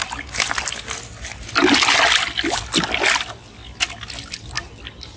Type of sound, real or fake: real